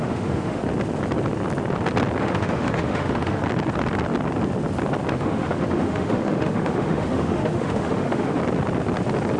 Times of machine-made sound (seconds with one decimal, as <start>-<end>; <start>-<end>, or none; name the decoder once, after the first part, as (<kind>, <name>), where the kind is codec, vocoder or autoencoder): 0.0-0.6 (autoencoder, DAC-VAE); 2.2-3.4; 5.1-8.4